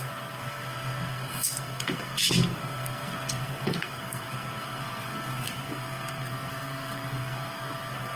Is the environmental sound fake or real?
fake